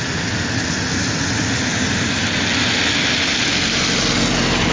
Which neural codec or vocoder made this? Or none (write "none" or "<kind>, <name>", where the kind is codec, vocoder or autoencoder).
none